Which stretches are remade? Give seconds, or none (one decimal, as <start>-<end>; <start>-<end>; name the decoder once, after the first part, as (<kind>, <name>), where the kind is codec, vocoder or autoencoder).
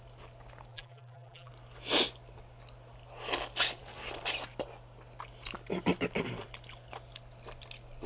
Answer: 0.7-1.5 (vocoder, BigVGAN v2)